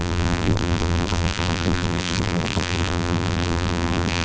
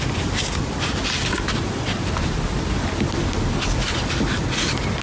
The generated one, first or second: first